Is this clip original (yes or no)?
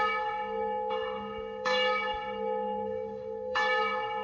no